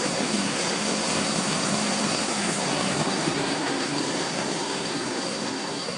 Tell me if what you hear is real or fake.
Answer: fake